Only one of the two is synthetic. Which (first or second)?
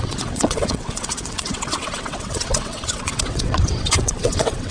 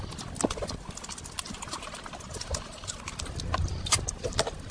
first